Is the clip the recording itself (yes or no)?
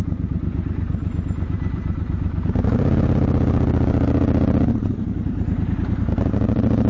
no